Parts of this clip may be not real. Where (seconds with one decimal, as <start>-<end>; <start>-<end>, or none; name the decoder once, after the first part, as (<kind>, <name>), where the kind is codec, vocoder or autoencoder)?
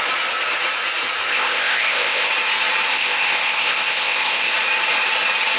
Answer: 1.3-2.3 (codec, ZipCodec); 2.9-4.5